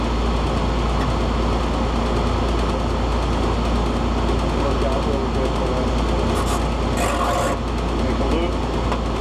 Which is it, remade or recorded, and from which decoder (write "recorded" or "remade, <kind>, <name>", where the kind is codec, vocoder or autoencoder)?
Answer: recorded